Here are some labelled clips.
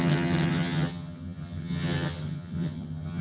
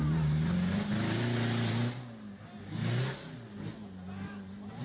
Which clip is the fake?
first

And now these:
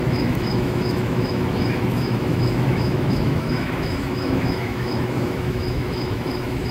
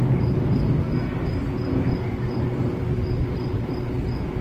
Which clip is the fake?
first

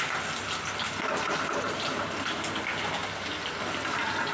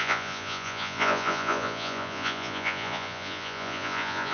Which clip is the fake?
second